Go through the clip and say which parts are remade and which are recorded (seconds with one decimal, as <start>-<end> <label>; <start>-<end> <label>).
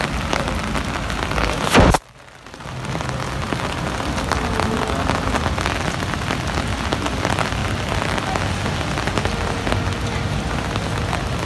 0.0-11.5 recorded